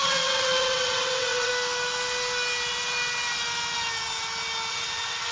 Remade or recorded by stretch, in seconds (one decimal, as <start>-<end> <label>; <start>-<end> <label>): 0.0-1.5 remade; 1.5-4.7 recorded; 4.7-5.3 remade

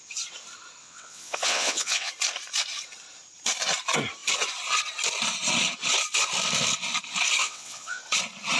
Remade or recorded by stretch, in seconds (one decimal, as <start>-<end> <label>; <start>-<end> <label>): 0.0-0.8 recorded; 0.8-2.1 remade; 2.1-7.4 recorded; 7.4-8.0 remade; 8.0-8.6 recorded

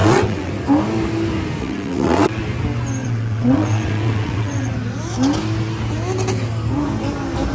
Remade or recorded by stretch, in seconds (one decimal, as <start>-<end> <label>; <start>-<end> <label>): 0.0-0.5 remade; 0.5-1.6 recorded; 1.6-2.4 remade; 2.4-3.0 recorded; 3.0-4.7 remade; 4.7-7.5 recorded

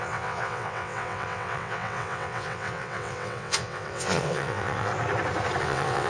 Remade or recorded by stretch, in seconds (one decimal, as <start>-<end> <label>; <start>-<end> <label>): 0.0-4.9 remade; 4.9-5.6 recorded; 5.6-6.1 remade

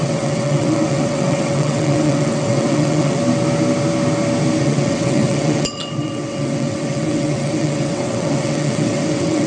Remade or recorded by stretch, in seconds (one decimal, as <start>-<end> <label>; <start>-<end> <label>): 0.0-3.2 remade; 3.2-4.6 recorded; 4.6-9.5 remade

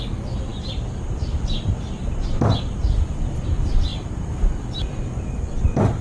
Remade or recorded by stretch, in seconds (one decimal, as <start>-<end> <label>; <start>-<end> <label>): 0.0-6.0 recorded

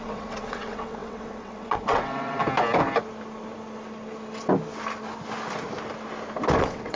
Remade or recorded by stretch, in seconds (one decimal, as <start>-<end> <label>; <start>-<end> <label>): 0.0-2.4 remade; 2.4-6.6 recorded; 6.6-7.0 remade